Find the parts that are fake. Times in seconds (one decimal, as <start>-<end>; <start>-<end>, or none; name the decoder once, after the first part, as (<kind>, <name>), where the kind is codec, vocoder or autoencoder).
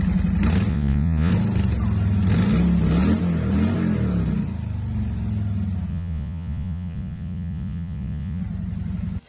0.7-1.3 (vocoder, Vocos); 5.9-8.4